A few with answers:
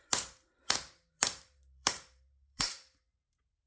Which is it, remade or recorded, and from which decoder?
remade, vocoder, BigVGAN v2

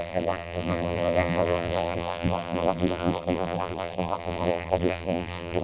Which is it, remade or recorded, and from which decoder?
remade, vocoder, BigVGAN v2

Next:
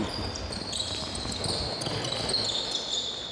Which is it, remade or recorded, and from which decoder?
recorded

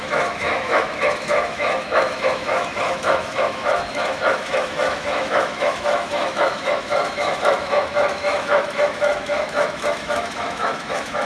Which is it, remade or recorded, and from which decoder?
remade, autoencoder, DAC-VAE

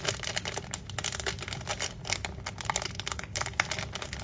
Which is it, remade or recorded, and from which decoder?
recorded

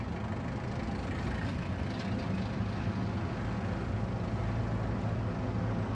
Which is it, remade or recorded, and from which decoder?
recorded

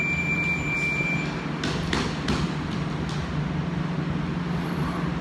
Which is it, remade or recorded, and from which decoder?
recorded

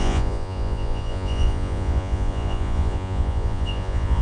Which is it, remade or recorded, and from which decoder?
remade, vocoder, Vocos